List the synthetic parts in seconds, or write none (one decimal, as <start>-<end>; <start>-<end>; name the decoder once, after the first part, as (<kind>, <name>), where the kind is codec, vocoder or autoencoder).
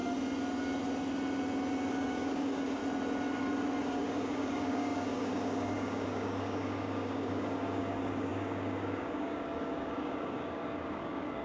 1.9-2.8 (codec, DAC); 3.8-11.4